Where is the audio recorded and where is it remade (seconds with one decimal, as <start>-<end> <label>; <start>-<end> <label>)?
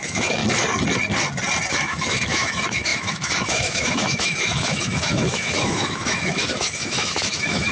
0.0-0.4 remade; 0.4-1.7 recorded; 1.7-7.7 remade